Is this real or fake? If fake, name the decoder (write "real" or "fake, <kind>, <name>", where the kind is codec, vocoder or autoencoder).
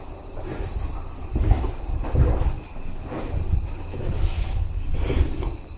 real